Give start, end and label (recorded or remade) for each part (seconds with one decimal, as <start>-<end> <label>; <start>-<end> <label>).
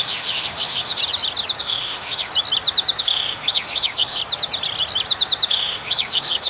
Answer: 0.0-1.0 remade; 1.0-1.6 recorded; 1.6-2.3 remade; 2.3-3.0 recorded; 3.0-4.2 remade; 4.2-5.5 recorded; 5.5-6.5 remade